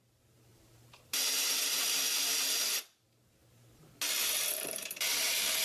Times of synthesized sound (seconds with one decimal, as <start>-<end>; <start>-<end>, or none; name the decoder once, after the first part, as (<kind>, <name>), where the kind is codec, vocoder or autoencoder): 0.0-3.4 (vocoder, BigVGAN v2); 4.2-5.6